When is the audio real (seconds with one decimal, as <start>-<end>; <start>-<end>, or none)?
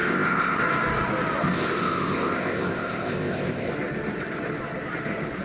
0.6-1.4; 3.7-5.4